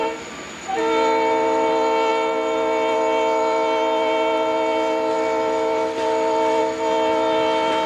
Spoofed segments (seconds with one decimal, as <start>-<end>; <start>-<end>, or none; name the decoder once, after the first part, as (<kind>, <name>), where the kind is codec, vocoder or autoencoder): none